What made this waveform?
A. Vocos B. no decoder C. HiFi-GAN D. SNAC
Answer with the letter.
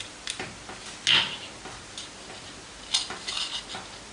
B